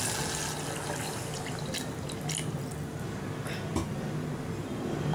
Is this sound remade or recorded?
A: recorded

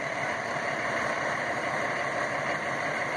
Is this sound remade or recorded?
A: remade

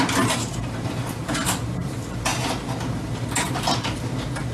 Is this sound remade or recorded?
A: recorded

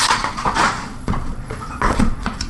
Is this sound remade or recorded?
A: remade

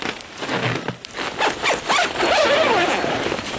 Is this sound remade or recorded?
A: recorded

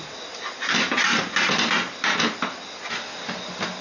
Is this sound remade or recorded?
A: recorded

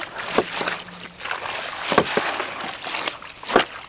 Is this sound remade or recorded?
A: recorded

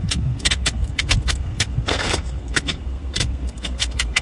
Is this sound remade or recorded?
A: remade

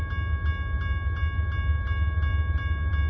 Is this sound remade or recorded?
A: recorded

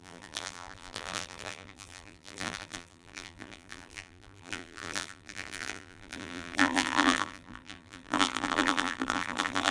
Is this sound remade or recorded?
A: remade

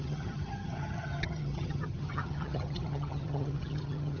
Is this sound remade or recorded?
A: remade